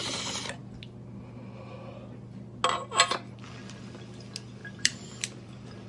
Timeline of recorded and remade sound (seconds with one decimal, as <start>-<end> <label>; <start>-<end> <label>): 0.0-4.6 recorded; 4.6-5.9 remade